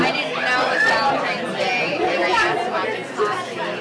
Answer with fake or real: real